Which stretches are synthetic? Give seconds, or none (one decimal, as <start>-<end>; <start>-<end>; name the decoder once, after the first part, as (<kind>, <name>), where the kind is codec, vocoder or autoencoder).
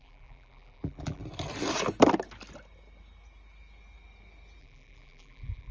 0.0-1.2 (vocoder, BigVGAN v2); 4.6-5.7